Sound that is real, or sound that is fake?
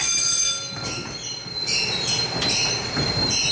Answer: real